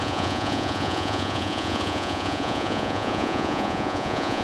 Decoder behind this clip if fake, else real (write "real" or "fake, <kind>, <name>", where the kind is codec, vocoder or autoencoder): fake, vocoder, Vocos